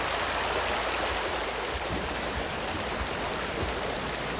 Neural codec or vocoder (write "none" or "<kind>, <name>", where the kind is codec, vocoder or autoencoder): none